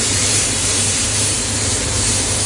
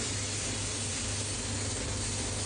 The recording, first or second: second